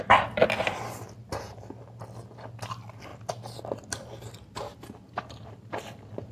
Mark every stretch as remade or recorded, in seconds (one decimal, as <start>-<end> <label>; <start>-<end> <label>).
0.0-1.2 remade; 1.2-2.5 recorded; 2.5-3.1 remade; 3.1-3.6 recorded; 3.6-6.3 remade